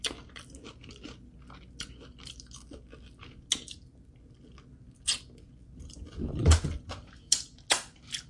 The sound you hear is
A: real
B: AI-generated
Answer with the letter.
A